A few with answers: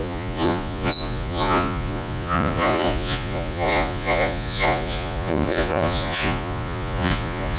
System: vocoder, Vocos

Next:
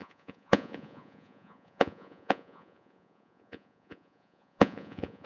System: vocoder, Vocos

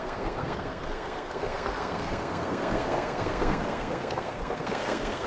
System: codec, SNAC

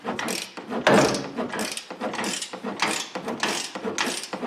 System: none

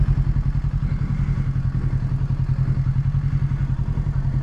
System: none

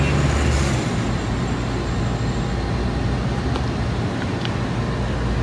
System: none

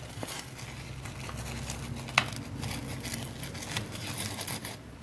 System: none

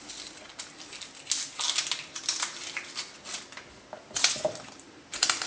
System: none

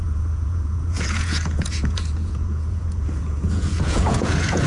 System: vocoder, Vocos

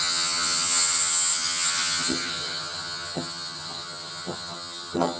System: vocoder, HiFi-GAN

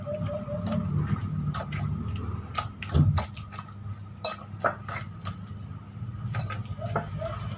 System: none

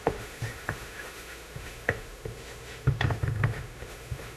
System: autoencoder, DAC-VAE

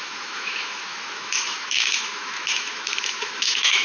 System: autoencoder, DAC-VAE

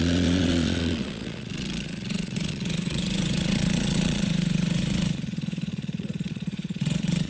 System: vocoder, Vocos